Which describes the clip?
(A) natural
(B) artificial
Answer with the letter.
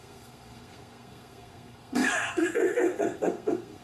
B